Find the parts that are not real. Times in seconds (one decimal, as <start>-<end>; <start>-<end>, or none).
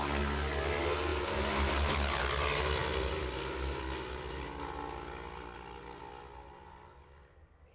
none